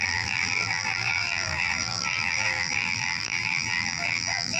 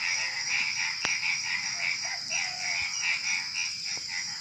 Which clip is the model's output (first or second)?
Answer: first